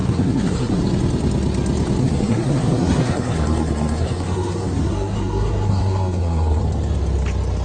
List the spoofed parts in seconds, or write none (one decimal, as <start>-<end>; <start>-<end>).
0.0-0.8; 2.0-6.6